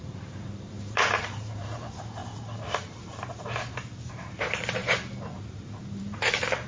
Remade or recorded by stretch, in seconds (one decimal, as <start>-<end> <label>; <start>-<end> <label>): 0.0-2.2 remade; 2.2-4.2 recorded; 4.2-4.8 remade; 4.8-6.0 recorded; 6.0-6.7 remade